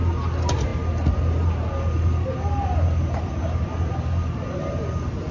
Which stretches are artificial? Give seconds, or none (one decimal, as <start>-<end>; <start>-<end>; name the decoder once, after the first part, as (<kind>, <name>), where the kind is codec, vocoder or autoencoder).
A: none